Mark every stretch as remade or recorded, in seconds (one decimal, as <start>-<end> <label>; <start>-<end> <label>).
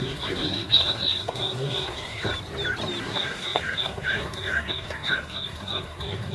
0.0-2.3 remade; 2.3-3.0 recorded; 3.0-6.3 remade